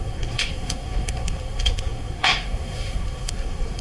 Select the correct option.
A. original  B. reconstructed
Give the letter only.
B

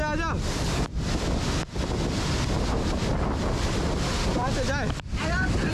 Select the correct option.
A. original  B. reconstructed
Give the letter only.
A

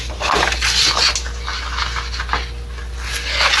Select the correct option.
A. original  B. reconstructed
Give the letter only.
A